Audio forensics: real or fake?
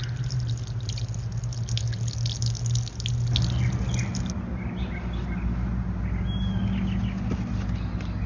real